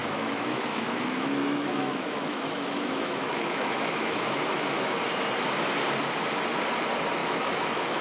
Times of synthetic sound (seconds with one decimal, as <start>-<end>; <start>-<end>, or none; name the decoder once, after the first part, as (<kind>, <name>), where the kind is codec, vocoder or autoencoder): 0.0-4.4 (autoencoder, DAC-VAE); 7.2-8.0